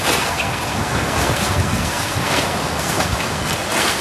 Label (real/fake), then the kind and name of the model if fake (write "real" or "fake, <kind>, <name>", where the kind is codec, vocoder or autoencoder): fake, codec, SNAC